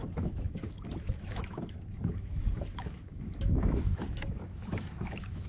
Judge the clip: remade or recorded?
remade